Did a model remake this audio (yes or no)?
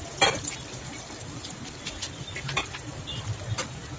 no